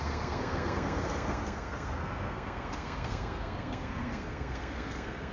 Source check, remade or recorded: remade